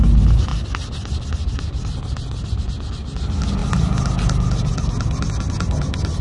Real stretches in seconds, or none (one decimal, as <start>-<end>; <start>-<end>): 0.0-6.2